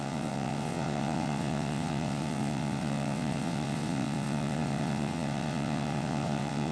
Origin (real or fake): fake